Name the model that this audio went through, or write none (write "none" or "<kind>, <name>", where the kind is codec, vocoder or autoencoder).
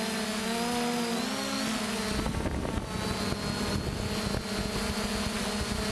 none